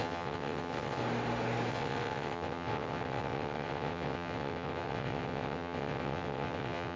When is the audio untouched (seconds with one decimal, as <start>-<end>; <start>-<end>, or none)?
1.0-1.7

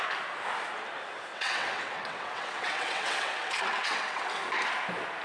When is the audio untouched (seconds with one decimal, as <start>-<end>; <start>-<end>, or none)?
0.0-1.3; 4.3-5.2

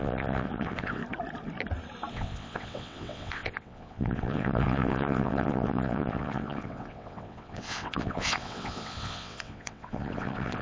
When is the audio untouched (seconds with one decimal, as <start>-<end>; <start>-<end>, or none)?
1.0-2.1

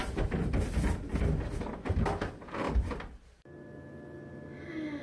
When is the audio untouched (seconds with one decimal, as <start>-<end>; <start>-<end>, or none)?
0.0-5.0

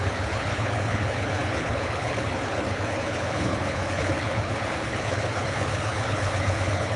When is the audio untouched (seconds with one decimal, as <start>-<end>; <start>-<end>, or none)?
none

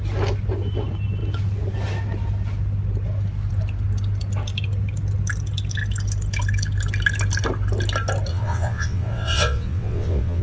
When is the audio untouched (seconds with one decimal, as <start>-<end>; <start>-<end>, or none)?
0.0-8.3

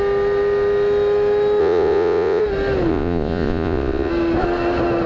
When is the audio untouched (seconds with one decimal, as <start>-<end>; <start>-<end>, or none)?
0.0-1.6; 2.4-2.9; 4.1-5.1

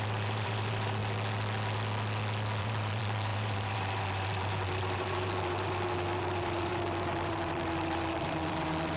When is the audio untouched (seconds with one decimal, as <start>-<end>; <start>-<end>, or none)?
1.0-2.6